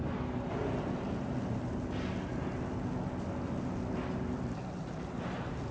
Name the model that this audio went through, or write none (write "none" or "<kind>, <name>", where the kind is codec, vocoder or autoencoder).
none